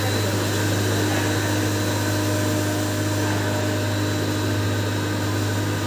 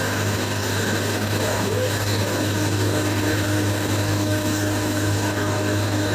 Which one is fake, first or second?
second